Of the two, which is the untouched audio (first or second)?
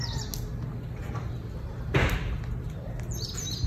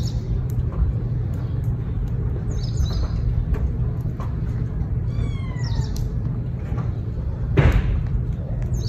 first